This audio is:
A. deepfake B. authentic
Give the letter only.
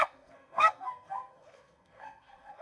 A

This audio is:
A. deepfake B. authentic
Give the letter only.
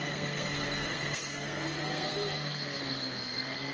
A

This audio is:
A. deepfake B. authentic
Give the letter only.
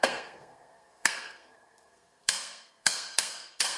A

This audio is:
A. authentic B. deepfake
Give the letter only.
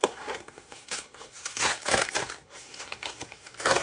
B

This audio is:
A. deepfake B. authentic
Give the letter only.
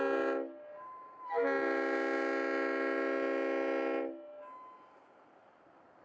B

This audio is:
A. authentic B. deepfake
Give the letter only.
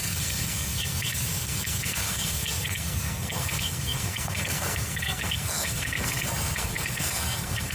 B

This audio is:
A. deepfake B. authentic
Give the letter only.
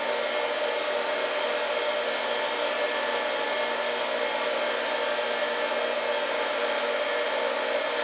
B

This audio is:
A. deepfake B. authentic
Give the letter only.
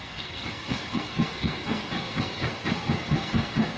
A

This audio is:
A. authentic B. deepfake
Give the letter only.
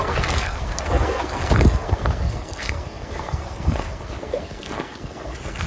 B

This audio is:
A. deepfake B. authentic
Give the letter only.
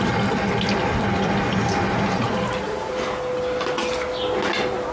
B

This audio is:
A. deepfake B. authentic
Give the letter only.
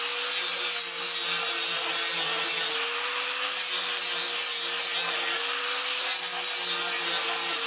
B